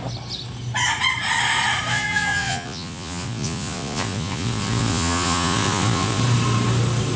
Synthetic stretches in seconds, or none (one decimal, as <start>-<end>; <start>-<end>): 1.9-6.2